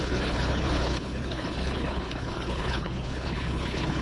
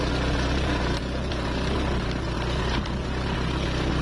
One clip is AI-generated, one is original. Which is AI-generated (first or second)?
first